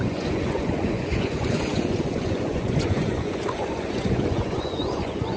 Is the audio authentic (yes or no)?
no